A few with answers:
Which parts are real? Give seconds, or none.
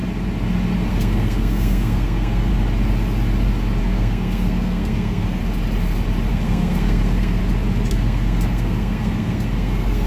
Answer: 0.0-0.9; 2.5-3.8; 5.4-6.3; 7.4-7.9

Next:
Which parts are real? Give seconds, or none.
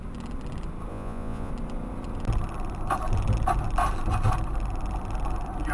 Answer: 0.0-0.9; 1.5-5.7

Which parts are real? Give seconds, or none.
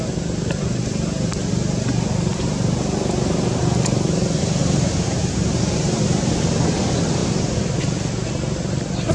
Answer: 0.0-2.3; 3.6-4.6; 6.5-7.2; 7.8-9.1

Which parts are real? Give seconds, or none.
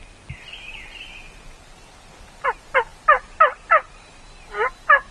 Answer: 0.0-5.1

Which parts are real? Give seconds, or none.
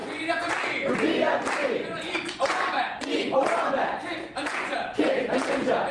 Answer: 0.5-1.6; 5.1-5.9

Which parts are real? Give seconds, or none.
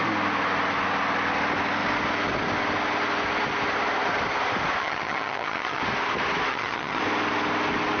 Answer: 0.0-4.8; 5.8-6.5; 7.0-8.0